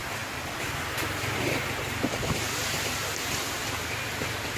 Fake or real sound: real